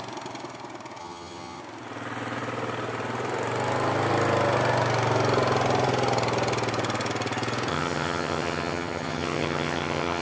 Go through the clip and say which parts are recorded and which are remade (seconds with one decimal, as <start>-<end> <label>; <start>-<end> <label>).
0.0-1.0 recorded; 1.0-1.6 remade; 1.6-7.7 recorded; 7.7-10.2 remade